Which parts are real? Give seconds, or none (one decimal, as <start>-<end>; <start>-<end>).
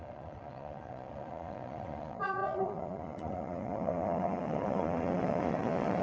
none